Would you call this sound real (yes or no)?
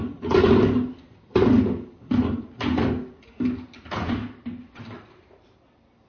yes